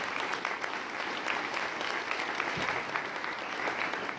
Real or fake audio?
real